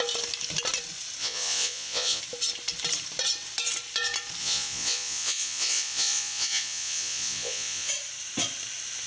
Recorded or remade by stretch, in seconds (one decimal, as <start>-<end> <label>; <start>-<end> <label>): 0.0-1.2 recorded; 1.2-2.2 remade; 2.2-4.4 recorded; 4.4-7.9 remade; 7.9-9.1 recorded